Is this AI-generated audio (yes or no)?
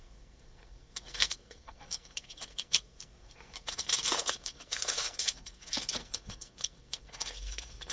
yes